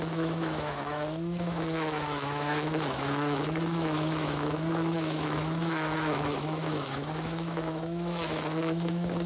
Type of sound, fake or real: fake